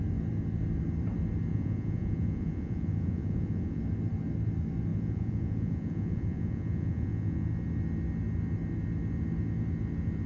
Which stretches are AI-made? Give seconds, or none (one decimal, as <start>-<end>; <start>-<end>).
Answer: 1.5-3.8; 4.9-7.5